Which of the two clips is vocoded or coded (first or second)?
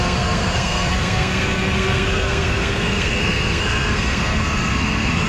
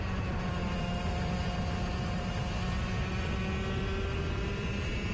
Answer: first